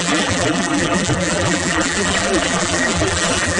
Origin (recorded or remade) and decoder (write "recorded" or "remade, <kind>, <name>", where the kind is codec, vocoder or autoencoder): remade, vocoder, BigVGAN v2